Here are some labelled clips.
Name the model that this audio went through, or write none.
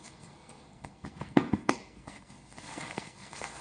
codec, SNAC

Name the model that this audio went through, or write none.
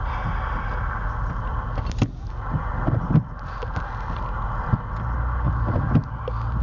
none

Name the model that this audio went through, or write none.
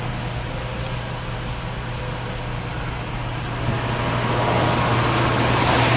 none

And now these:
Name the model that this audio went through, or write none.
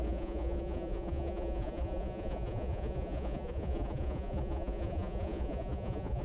vocoder, Vocos